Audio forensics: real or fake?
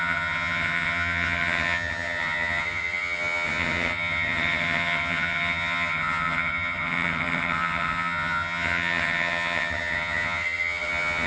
fake